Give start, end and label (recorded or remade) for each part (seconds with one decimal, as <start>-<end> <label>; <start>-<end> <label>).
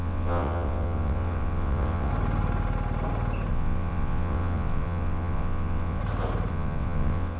0.0-2.1 remade; 2.1-3.5 recorded; 3.5-6.0 remade; 6.0-6.5 recorded; 6.5-7.4 remade